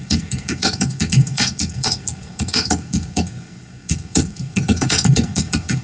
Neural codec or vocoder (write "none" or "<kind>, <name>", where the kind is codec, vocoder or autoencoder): codec, SNAC